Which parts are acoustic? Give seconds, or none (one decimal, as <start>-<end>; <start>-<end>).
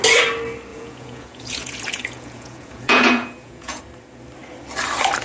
0.0-0.7; 3.8-5.2